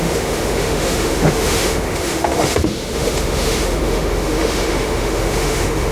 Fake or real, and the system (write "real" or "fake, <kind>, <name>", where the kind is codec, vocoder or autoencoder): fake, autoencoder, DAC-VAE